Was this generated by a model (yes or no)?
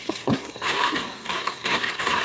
yes